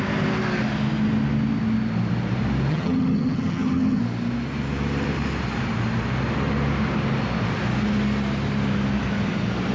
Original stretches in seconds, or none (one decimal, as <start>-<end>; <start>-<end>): 0.0-2.7; 4.0-9.7